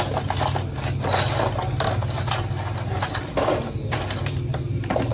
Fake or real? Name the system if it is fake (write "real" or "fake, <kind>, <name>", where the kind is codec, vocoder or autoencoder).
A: real